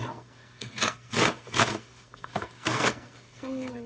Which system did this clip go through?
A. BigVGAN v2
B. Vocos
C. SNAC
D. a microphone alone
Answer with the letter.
C